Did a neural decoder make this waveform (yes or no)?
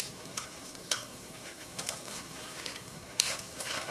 yes